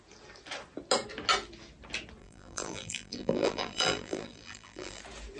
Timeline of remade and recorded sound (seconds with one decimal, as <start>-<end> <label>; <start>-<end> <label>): 0.0-2.2 recorded; 2.2-5.0 remade; 5.0-5.4 recorded

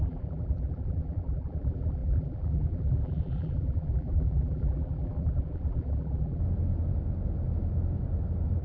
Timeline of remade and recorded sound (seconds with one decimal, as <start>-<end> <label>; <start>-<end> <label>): 0.0-6.4 remade; 6.4-8.6 recorded

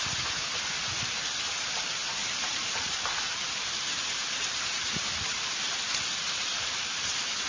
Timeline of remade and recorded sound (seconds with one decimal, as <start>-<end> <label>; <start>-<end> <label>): 0.0-2.2 recorded; 2.2-4.9 remade; 4.9-6.5 recorded; 6.5-7.5 remade

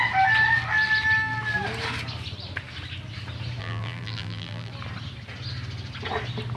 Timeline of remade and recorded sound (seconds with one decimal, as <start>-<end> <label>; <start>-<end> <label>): 0.0-3.6 recorded; 3.6-4.7 remade; 4.7-6.6 recorded

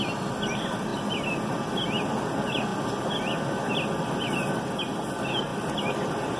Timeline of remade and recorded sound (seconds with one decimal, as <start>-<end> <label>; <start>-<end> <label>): 0.0-5.5 recorded; 5.5-6.4 remade